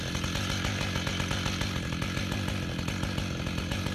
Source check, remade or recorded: recorded